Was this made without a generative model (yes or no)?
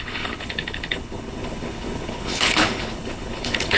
no